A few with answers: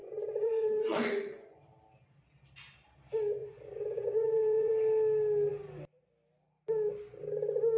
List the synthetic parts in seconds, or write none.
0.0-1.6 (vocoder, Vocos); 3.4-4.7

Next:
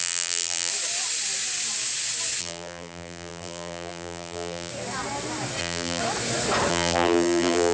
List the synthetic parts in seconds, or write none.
0.0-0.7 (vocoder, BigVGAN v2); 2.4-4.7; 5.6-6.0; 6.7-7.7

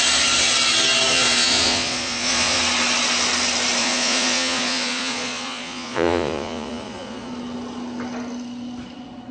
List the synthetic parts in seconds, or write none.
1.1-2.6 (vocoder, Vocos); 3.8-7.3

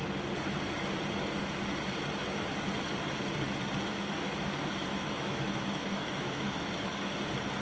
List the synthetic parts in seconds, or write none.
4.9-7.1 (autoencoder, DAC-VAE)

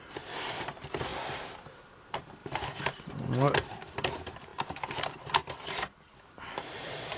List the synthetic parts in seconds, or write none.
0.0-1.1 (vocoder, BigVGAN v2); 1.6-4.5; 6.2-7.2

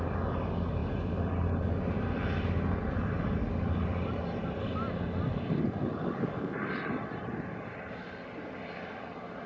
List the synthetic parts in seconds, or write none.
none

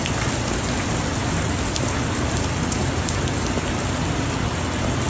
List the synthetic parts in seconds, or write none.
none